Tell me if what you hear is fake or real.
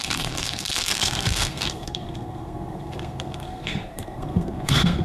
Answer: fake